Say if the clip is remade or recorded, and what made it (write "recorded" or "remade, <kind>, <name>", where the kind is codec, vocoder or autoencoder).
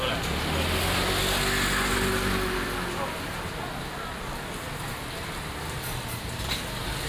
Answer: recorded